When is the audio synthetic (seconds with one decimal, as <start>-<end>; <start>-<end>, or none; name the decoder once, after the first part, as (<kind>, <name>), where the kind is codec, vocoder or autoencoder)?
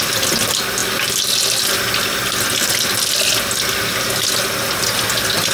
none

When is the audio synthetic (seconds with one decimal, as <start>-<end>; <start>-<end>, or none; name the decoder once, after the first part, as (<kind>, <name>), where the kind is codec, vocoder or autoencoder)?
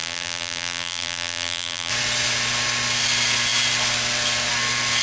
0.0-1.9 (vocoder, BigVGAN v2)